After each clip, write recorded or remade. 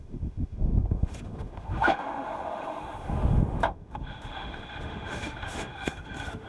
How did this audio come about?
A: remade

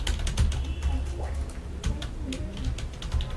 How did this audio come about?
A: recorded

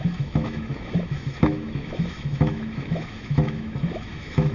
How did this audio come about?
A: remade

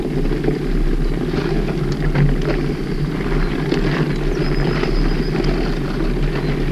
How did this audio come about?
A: recorded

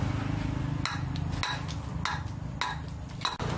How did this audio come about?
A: recorded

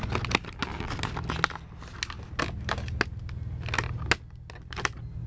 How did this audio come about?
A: recorded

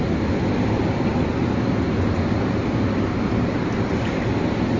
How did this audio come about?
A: recorded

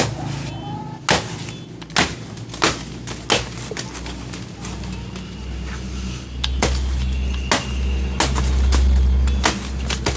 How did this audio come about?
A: recorded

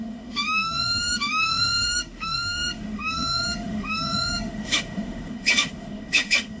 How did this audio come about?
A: remade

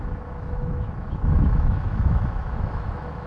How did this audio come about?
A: remade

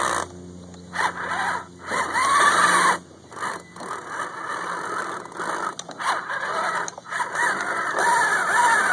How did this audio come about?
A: recorded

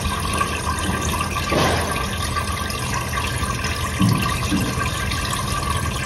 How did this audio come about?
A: recorded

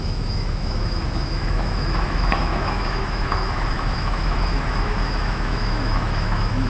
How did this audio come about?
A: remade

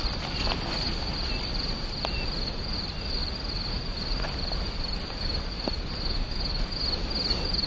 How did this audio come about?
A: recorded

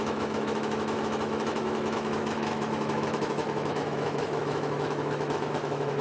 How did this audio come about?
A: remade